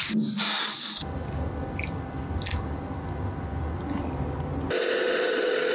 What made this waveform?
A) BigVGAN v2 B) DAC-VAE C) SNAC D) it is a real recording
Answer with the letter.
D